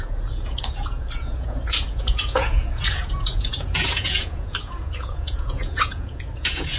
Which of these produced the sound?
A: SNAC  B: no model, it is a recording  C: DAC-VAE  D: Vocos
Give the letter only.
D